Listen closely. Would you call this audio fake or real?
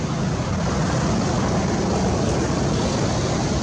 real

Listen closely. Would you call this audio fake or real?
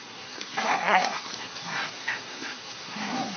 fake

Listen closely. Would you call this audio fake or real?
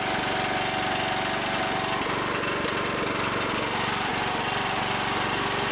real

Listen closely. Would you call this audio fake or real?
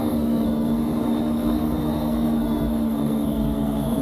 fake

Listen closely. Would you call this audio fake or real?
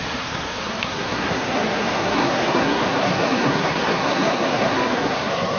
fake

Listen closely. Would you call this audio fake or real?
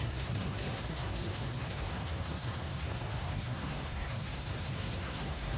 fake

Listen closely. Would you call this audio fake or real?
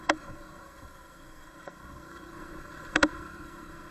fake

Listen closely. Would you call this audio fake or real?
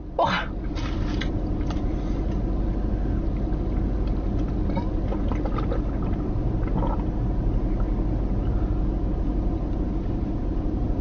real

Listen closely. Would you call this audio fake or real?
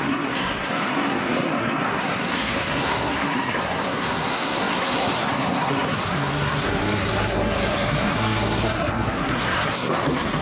fake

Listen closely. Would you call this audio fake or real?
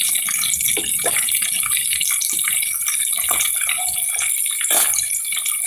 real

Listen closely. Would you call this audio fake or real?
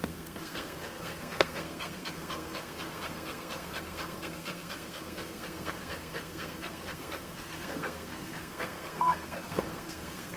fake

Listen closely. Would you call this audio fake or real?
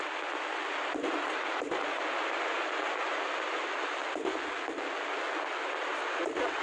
real